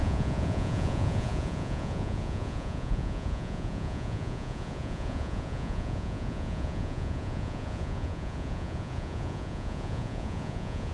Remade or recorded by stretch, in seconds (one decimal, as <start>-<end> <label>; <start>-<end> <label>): 0.0-10.9 remade